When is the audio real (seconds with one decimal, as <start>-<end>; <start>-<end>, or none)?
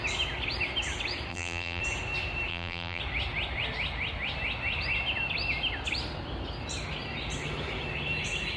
0.0-1.3; 1.8-2.5; 3.0-8.6